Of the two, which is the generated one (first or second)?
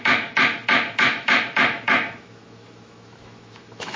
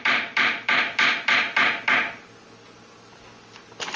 first